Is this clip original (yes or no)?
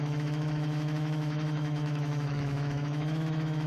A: no